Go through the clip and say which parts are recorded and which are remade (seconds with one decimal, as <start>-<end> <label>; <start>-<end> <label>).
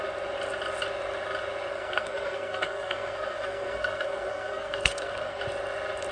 0.0-1.7 recorded; 1.7-5.4 remade; 5.4-6.1 recorded